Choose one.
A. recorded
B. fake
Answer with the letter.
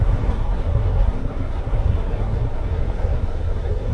B